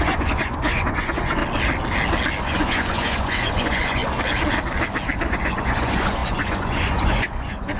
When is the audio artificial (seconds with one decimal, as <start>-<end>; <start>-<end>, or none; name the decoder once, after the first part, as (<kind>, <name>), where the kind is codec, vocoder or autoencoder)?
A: 0.0-1.4 (vocoder, Vocos); 2.4-4.0; 5.3-7.8